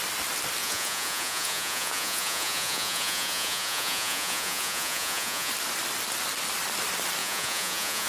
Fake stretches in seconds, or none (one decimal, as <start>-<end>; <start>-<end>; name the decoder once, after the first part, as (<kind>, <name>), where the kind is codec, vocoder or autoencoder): 0.6-5.5 (vocoder, Vocos); 7.2-8.1